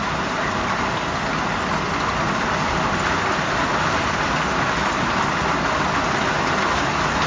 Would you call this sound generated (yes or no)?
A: no